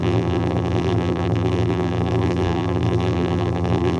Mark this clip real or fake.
fake